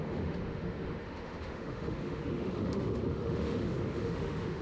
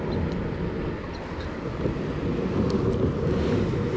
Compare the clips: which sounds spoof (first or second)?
first